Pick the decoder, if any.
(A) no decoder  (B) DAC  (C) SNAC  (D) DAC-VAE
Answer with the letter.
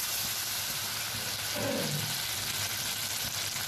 A